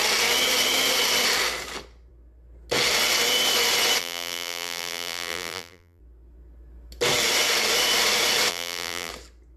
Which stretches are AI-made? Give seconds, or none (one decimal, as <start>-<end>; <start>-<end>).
4.0-6.0; 8.5-9.1